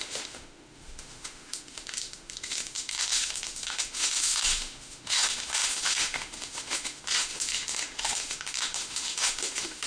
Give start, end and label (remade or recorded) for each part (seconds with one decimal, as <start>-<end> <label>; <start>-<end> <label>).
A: 0.0-9.9 remade